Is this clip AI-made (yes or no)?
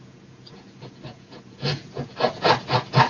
yes